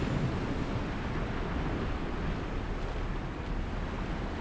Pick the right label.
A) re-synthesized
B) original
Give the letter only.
B